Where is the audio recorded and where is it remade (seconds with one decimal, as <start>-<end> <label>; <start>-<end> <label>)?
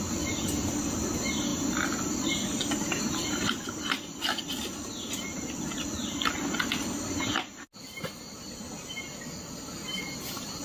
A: 0.0-10.6 recorded